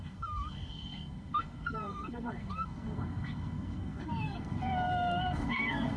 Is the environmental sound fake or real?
fake